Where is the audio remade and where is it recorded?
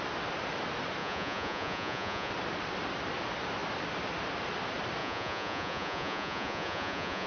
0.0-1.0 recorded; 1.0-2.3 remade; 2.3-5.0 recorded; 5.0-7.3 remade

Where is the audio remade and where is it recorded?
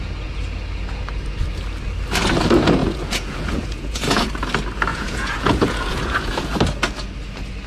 0.0-2.8 recorded; 2.8-4.3 remade; 4.3-4.9 recorded; 4.9-6.6 remade; 6.6-7.7 recorded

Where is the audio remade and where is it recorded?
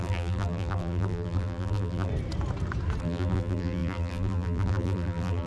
0.0-2.1 remade; 2.1-3.0 recorded; 3.0-5.5 remade